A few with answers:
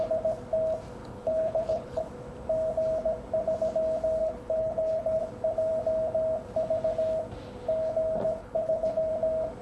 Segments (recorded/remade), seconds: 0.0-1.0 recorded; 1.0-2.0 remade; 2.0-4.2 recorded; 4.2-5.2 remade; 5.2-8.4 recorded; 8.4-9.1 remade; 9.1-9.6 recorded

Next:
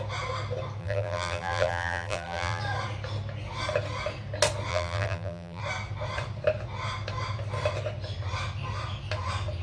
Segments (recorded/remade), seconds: 0.0-0.8 recorded; 0.8-2.6 remade; 2.6-4.7 recorded; 4.7-5.6 remade; 5.6-9.6 recorded